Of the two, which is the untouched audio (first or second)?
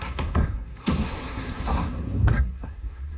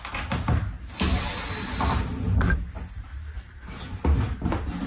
second